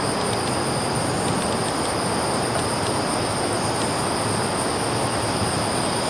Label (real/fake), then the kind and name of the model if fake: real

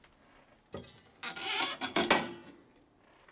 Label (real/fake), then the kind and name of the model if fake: real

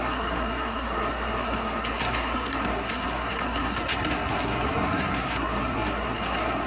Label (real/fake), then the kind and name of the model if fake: fake, codec, SNAC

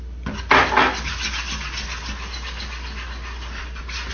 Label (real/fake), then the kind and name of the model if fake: real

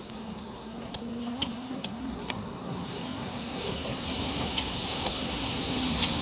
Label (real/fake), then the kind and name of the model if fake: fake, codec, SNAC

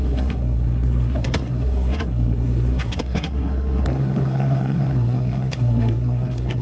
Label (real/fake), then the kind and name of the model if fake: fake, codec, SNAC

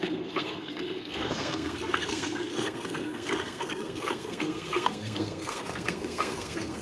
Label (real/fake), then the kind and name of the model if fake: fake, codec, SNAC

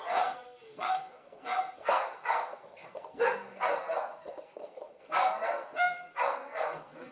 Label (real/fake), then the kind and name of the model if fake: fake, codec, SNAC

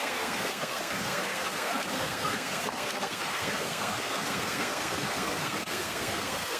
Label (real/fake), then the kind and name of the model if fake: fake, codec, SNAC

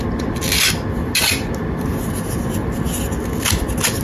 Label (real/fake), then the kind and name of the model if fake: real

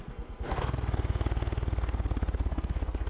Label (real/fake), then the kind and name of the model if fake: fake, codec, SNAC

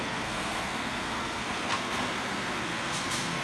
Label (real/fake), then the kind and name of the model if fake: fake, codec, SNAC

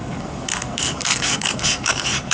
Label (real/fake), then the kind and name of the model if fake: fake, codec, SNAC